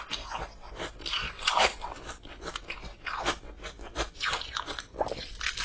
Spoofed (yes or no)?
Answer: no